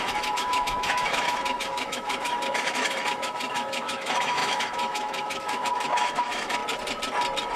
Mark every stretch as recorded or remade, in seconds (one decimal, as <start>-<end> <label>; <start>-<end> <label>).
0.0-6.6 remade; 6.6-7.6 recorded